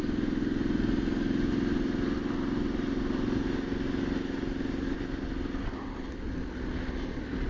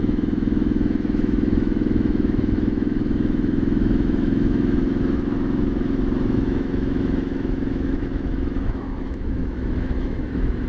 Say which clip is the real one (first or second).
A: first